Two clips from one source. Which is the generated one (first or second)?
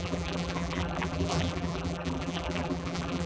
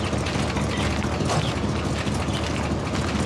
first